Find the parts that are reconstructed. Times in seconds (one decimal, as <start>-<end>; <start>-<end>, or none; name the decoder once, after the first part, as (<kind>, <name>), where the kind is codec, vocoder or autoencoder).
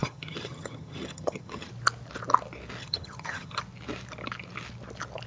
0.0-1.7 (vocoder, HiFi-GAN); 2.8-3.6